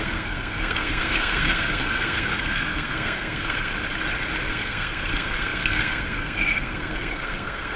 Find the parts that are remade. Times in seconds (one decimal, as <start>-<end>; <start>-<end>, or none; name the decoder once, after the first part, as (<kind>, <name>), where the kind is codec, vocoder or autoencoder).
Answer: 0.0-3.7 (codec, SNAC); 4.5-7.8